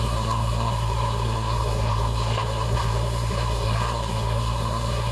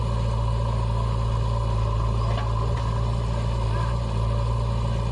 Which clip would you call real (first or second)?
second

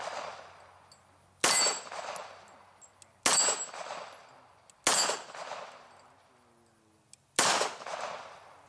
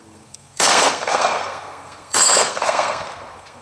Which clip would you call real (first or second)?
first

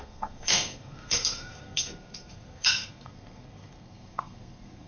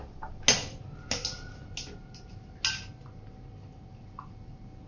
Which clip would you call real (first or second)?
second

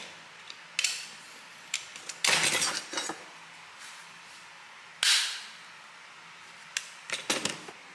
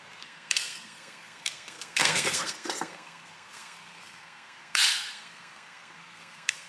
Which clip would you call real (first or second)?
first